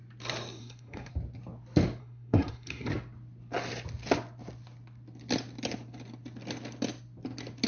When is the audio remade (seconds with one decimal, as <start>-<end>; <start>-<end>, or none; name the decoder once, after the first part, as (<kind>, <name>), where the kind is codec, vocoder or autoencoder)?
0.6-1.1 (codec, SNAC); 2.0-2.9

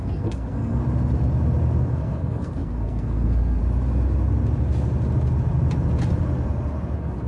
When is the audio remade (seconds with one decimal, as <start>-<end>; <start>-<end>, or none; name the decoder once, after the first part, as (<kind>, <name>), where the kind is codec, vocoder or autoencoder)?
0.0-0.8 (codec, SNAC); 1.8-3.6

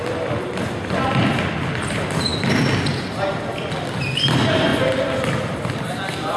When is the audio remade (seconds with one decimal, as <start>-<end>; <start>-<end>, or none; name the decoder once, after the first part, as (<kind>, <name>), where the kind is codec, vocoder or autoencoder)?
none

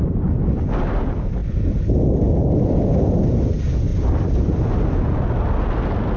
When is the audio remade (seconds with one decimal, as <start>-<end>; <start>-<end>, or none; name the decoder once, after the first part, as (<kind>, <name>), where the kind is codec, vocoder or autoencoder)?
none

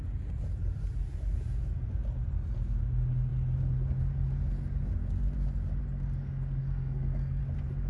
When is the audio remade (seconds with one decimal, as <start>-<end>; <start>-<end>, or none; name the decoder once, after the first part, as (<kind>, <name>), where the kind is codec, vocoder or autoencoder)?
6.6-7.4 (codec, SNAC)

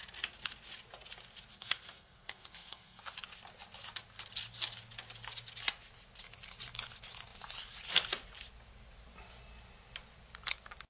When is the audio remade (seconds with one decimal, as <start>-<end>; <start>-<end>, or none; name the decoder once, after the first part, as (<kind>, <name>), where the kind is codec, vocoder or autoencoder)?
1.5-3.0 (codec, SNAC)

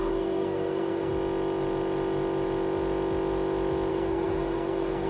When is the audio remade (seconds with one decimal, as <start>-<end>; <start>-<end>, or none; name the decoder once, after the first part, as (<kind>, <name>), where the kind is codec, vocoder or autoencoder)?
0.0-1.1 (codec, SNAC); 3.9-5.1